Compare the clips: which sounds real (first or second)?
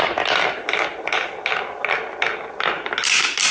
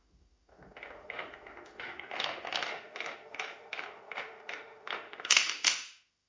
first